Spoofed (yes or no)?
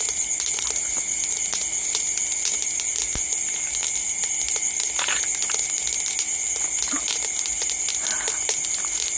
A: no